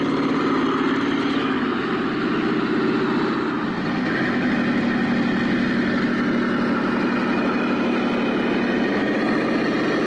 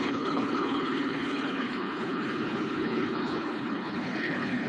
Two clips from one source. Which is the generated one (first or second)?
second